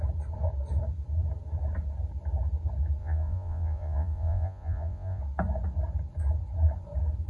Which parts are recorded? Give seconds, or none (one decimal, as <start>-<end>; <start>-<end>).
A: 0.0-3.0; 5.2-7.3